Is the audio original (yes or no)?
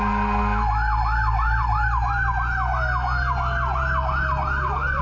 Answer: yes